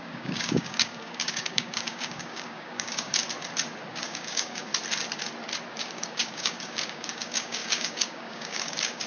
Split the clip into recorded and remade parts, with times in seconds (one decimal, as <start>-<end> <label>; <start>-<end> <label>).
0.0-3.2 remade; 3.2-3.9 recorded; 3.9-4.7 remade; 4.7-5.7 recorded; 5.7-9.1 remade